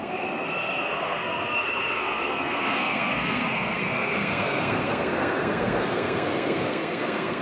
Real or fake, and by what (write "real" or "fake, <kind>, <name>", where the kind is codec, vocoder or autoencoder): fake, codec, SNAC